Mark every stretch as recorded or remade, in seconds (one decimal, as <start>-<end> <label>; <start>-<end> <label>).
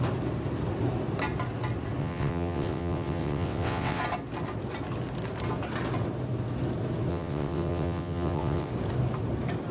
0.0-2.0 recorded; 2.0-4.0 remade; 4.0-7.1 recorded; 7.1-8.7 remade; 8.7-9.7 recorded